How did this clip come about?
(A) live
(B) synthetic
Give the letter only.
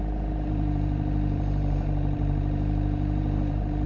B